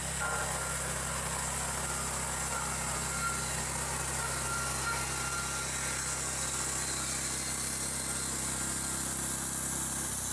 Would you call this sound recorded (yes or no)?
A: yes